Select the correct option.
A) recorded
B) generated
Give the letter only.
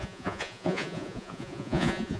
B